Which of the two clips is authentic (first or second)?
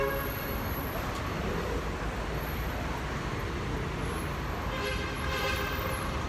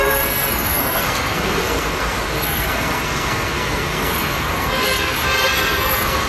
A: first